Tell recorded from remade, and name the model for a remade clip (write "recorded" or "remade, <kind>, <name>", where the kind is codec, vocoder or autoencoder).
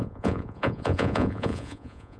remade, vocoder, Vocos